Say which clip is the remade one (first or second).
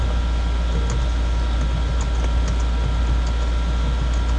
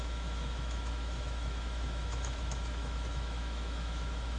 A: second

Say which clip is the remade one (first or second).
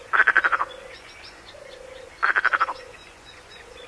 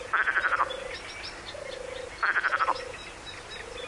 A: first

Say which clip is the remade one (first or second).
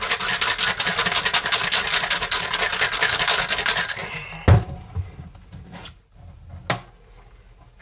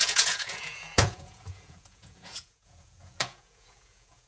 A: second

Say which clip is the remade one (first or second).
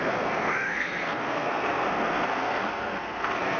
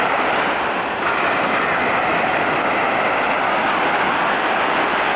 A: first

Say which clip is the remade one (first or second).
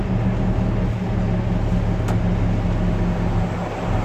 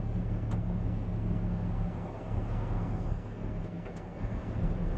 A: second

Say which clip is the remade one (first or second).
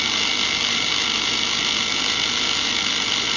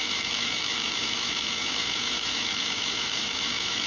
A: second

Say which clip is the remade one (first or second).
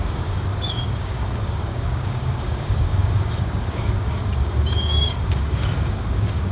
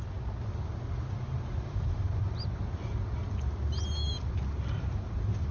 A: first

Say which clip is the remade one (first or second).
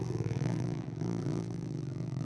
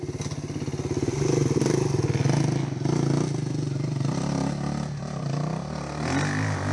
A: first